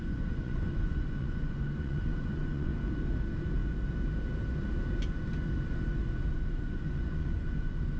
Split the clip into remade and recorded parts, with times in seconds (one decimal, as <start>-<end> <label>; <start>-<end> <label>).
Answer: 0.0-2.7 remade; 2.7-6.3 recorded; 6.3-8.0 remade